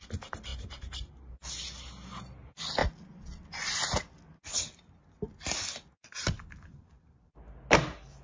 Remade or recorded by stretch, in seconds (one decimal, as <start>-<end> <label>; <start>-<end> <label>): 0.0-0.5 recorded; 0.5-1.2 remade; 1.2-8.2 recorded